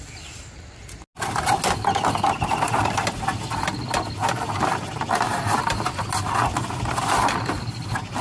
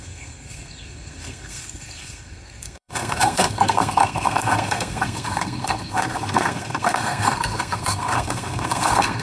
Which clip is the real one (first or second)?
first